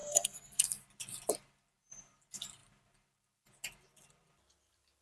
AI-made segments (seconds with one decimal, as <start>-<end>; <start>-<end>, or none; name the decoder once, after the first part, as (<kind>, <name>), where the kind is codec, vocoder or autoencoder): 0.0-0.8 (codec, SNAC)

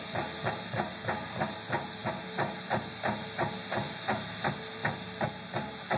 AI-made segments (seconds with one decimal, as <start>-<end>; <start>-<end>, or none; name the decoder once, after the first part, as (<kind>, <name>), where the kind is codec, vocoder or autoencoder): none

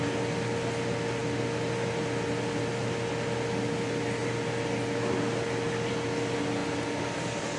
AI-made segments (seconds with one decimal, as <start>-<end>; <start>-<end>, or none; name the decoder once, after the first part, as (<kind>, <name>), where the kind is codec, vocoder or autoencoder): none